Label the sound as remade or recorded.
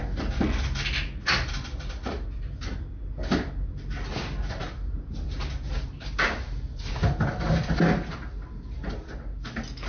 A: recorded